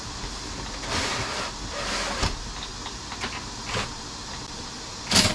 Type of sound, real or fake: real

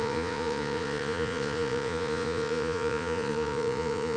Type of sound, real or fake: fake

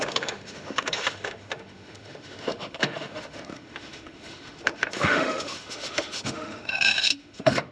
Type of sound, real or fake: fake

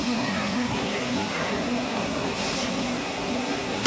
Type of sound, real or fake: fake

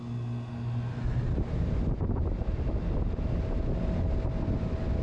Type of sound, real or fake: real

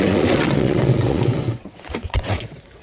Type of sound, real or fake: fake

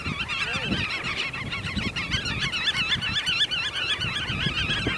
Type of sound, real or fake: real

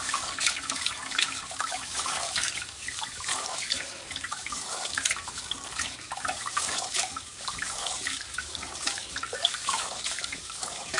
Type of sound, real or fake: fake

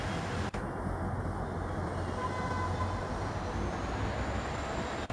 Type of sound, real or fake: real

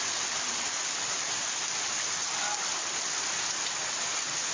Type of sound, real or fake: real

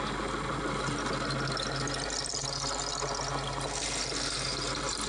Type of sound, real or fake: real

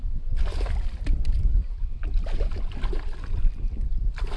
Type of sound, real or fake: real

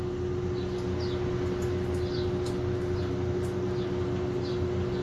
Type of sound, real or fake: real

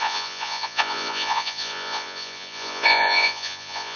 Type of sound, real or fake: fake